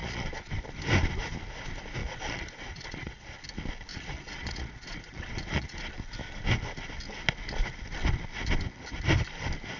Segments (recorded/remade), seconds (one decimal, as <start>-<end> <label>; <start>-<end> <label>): 0.0-0.5 remade; 0.5-2.0 recorded; 2.0-3.4 remade; 3.4-3.9 recorded; 3.9-5.9 remade; 5.9-9.8 recorded